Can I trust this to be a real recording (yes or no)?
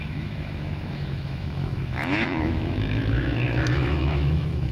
no